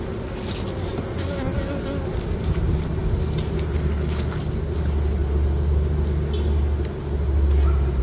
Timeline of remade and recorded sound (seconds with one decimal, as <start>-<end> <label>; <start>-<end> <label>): 0.0-8.0 recorded